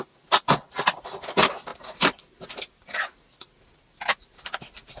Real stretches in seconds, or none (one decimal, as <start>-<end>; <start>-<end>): 0.0-5.0